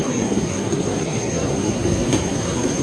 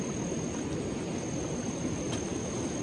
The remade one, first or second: first